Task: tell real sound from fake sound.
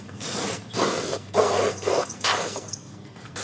fake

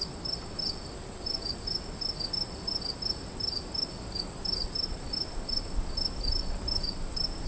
real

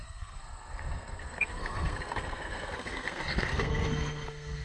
fake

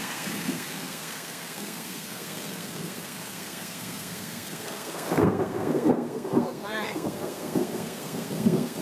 fake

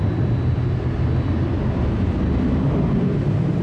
real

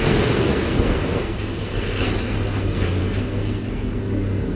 fake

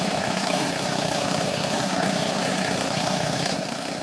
fake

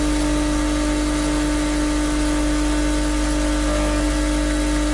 real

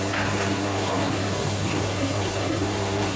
fake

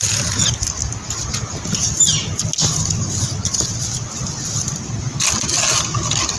real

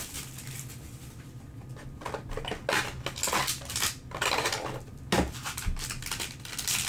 real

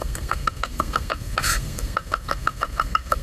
fake